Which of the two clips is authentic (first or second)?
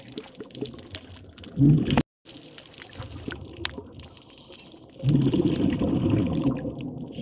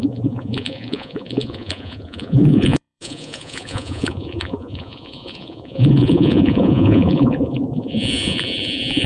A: first